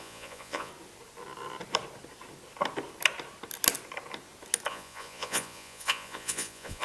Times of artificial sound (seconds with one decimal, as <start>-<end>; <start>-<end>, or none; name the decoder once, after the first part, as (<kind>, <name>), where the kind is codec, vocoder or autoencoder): 0.0-0.7 (vocoder, Vocos); 4.7-6.8